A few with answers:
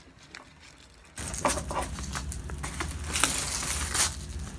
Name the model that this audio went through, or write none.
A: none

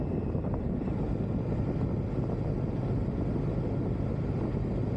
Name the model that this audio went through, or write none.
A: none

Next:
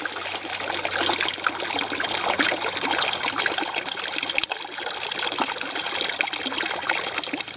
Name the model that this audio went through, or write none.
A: none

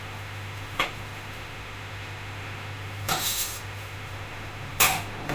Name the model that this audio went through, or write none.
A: autoencoder, DAC-VAE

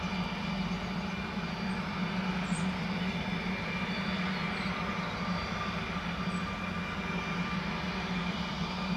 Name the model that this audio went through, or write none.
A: none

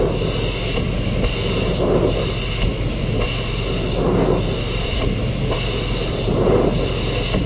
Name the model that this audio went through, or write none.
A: none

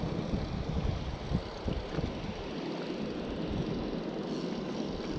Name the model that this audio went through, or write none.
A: none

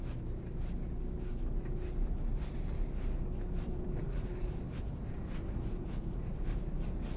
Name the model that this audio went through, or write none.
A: none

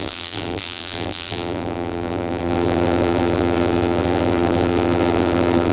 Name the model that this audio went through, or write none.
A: vocoder, BigVGAN v2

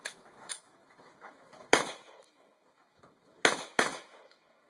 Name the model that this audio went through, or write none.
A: autoencoder, DAC-VAE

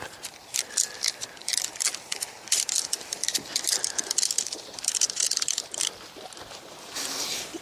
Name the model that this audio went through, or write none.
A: none